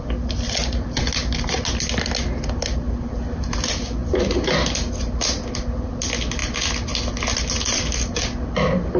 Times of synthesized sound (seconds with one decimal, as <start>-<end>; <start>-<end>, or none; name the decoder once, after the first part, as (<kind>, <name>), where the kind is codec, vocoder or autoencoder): none